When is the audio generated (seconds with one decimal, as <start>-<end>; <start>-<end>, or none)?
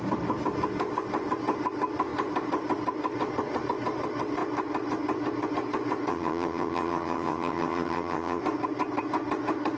6.1-8.4